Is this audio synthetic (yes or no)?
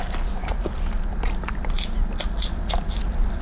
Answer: no